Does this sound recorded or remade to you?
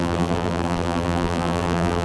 remade